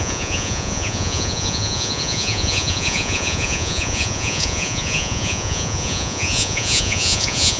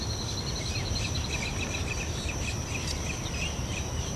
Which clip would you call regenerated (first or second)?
first